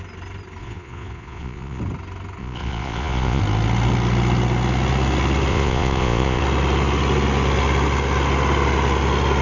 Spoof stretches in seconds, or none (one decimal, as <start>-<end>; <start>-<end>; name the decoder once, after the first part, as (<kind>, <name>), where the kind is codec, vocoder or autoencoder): 0.6-1.8 (vocoder, Vocos); 2.4-3.4; 5.5-6.4

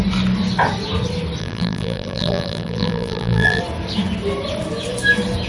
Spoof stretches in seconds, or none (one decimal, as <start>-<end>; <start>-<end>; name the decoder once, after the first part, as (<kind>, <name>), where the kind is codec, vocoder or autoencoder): 1.4-3.6 (vocoder, BigVGAN v2)